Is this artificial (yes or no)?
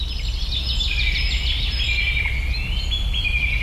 no